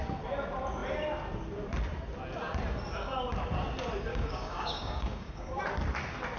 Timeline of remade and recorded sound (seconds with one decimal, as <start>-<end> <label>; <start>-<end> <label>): 0.0-4.1 recorded; 4.1-5.6 remade; 5.6-6.4 recorded